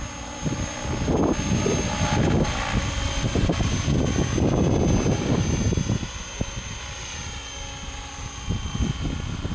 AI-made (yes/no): no